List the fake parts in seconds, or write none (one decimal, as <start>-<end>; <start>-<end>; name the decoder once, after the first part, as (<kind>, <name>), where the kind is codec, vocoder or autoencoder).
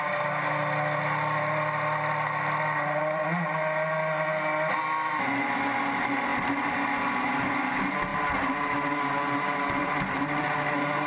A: none